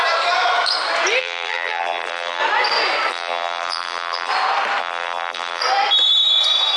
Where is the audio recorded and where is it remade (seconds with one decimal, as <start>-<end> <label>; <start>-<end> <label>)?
0.0-1.2 recorded; 1.2-2.4 remade; 2.4-3.1 recorded; 3.1-4.3 remade; 4.3-4.8 recorded; 4.8-5.6 remade; 5.6-6.8 recorded